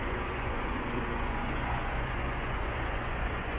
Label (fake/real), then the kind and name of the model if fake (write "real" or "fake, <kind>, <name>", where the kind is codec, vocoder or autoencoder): fake, vocoder, Vocos